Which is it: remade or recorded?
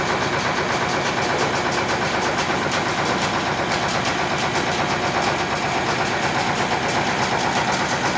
recorded